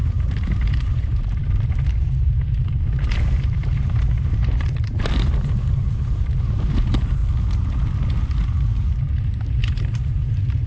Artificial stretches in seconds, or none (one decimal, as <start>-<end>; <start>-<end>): 0.0-7.2; 9.2-10.7